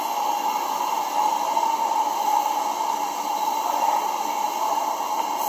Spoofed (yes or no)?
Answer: no